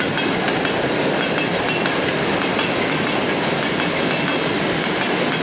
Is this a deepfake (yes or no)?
no